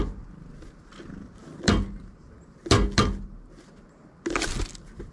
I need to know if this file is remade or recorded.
recorded